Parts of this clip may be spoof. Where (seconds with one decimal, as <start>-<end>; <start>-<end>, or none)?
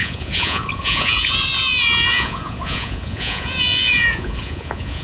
0.0-5.0